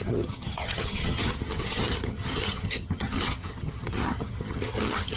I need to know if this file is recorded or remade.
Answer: remade